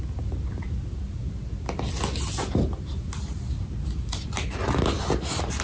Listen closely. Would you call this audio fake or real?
real